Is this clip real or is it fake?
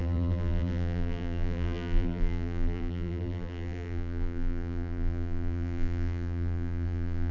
fake